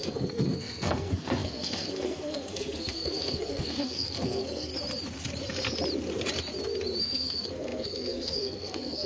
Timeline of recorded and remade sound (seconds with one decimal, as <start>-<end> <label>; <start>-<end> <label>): 0.0-4.7 remade; 4.7-7.0 recorded; 7.0-9.1 remade